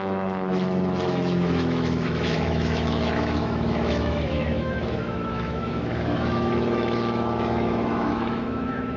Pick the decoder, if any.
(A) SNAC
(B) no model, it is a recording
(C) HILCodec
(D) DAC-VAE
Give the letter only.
D